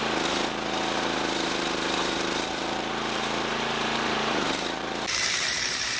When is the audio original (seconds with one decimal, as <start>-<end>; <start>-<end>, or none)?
none